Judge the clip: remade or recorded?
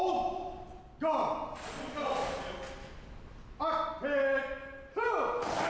recorded